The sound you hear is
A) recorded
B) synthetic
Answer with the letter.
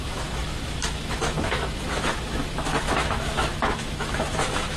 B